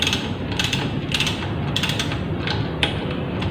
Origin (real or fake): fake